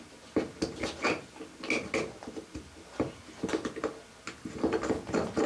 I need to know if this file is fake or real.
real